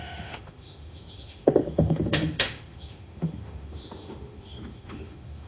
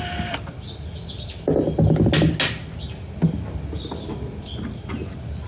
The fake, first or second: first